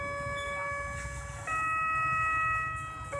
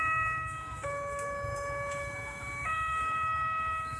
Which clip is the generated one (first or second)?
second